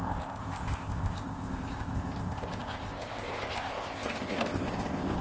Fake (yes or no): yes